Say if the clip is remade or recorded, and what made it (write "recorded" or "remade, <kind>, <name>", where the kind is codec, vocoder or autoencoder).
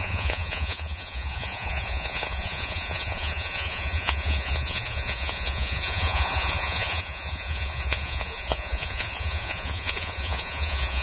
remade, vocoder, Vocos